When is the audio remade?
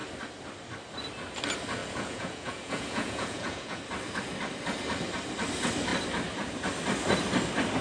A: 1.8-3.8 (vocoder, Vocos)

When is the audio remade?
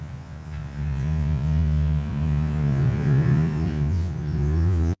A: 0.0-5.0 (vocoder, Vocos)